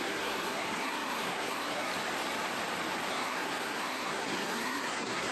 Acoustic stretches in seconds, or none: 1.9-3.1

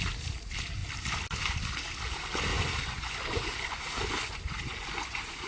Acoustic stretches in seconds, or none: 0.0-2.5